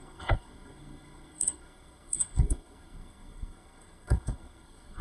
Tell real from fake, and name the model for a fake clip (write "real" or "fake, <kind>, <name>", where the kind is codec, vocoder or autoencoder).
fake, codec, SNAC